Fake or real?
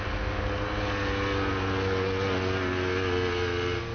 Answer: real